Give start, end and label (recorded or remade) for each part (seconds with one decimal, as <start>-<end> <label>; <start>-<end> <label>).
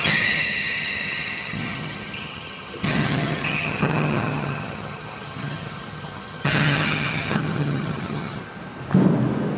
0.0-8.4 remade; 8.4-9.6 recorded